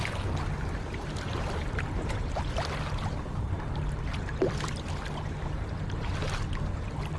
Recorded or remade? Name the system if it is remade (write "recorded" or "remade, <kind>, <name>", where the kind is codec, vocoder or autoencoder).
recorded